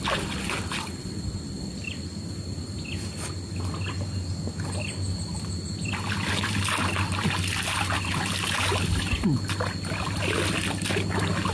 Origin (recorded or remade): recorded